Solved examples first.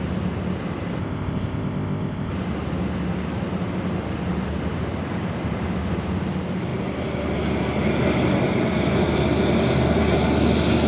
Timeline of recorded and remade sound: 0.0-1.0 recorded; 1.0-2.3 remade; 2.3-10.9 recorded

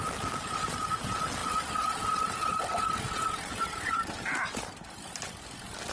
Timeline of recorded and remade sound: 0.0-5.9 recorded